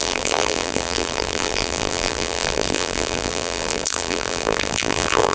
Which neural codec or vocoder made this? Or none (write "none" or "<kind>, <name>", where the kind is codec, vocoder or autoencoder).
vocoder, BigVGAN v2